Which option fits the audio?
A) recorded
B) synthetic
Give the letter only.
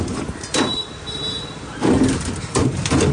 A